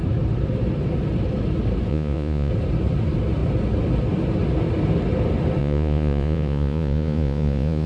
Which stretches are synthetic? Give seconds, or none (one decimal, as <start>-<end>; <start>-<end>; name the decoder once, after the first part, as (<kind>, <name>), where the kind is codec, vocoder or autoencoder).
1.9-2.5 (vocoder, Vocos); 5.6-7.9